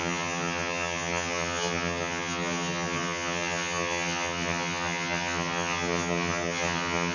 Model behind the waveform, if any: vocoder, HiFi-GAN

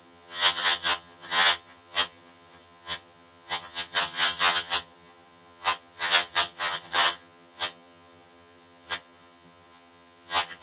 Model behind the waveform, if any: vocoder, HiFi-GAN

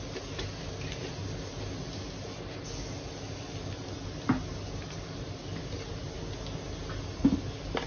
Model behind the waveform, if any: none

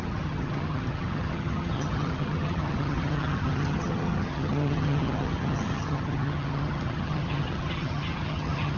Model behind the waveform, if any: vocoder, HiFi-GAN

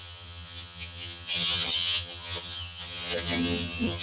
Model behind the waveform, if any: vocoder, HiFi-GAN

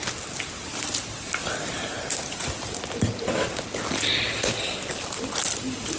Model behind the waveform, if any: none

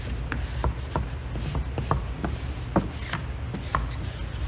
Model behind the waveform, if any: none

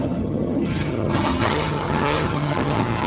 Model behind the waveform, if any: vocoder, HiFi-GAN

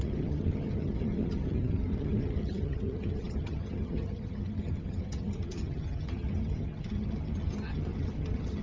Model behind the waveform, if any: vocoder, HiFi-GAN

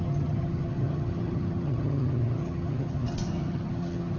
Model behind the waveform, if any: vocoder, HiFi-GAN